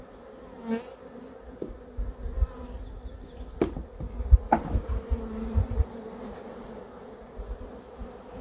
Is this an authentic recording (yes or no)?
yes